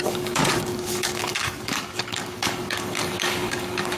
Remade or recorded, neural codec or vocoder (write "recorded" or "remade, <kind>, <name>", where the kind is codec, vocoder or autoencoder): remade, codec, DAC